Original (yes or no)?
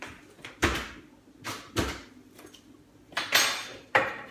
yes